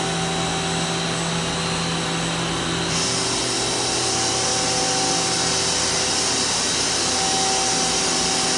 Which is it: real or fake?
real